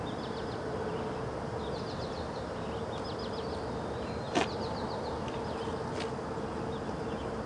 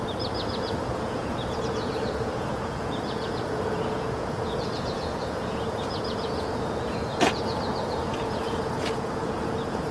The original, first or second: first